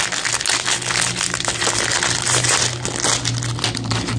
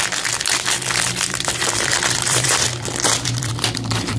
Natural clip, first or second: first